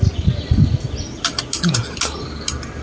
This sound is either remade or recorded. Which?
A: recorded